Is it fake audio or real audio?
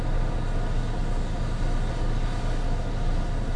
real